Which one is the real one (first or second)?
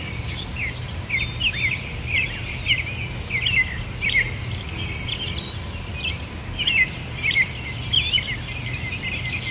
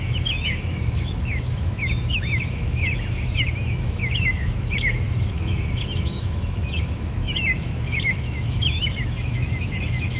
first